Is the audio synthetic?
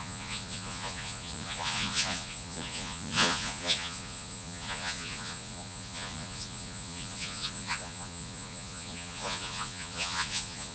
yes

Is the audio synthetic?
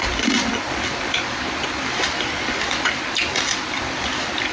no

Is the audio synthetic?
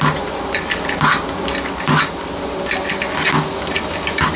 no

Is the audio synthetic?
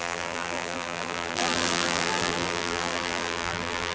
yes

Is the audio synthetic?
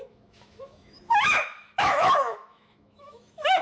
yes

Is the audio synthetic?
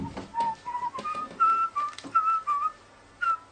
no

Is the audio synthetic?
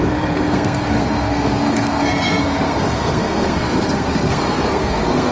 yes